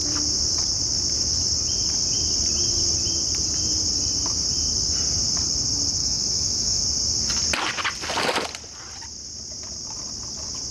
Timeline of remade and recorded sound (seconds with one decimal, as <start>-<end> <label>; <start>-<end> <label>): 0.0-6.0 recorded; 6.0-6.8 remade; 6.8-10.7 recorded